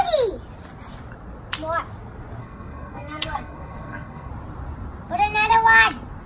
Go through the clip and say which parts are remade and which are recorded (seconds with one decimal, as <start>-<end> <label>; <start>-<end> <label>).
0.0-2.4 recorded; 2.4-4.3 remade; 4.3-6.3 recorded